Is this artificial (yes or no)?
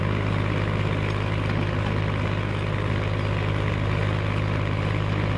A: no